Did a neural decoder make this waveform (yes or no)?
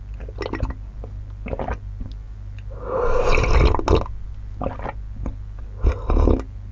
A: no